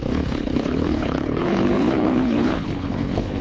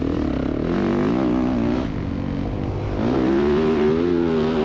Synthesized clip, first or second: first